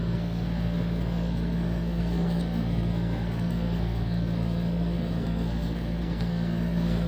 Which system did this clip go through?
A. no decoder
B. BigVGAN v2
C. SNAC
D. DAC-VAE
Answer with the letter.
C